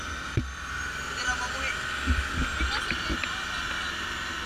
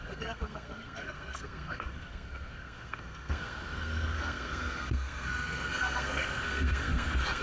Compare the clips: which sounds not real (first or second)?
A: second